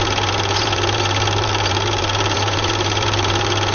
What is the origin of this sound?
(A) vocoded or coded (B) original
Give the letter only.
A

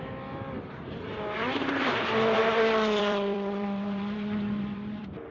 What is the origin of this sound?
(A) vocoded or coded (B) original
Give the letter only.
A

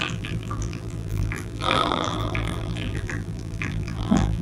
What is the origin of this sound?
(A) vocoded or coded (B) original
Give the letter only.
A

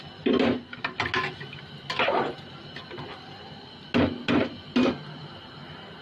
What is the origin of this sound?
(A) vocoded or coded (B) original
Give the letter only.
B